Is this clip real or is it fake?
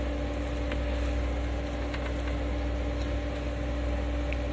real